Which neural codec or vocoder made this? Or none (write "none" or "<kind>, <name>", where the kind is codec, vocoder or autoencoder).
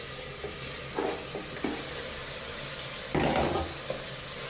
none